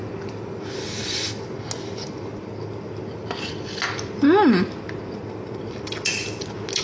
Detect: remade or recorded recorded